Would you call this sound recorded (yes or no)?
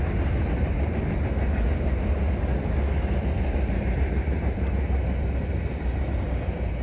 yes